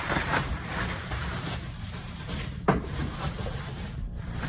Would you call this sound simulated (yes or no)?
yes